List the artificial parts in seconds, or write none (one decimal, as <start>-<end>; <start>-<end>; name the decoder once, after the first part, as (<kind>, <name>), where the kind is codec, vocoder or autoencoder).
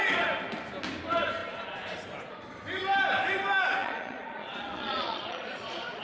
3.8-6.0 (vocoder, Vocos)